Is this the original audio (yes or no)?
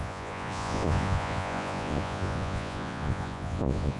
no